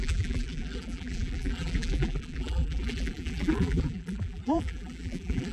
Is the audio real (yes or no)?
no